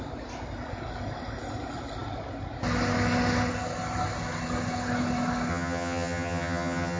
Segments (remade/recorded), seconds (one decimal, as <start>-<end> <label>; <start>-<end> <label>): 0.0-5.5 recorded; 5.5-7.0 remade